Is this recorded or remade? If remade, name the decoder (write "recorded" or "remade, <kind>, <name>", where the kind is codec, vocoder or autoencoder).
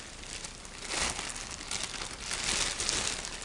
recorded